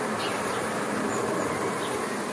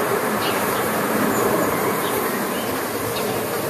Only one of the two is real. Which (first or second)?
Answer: first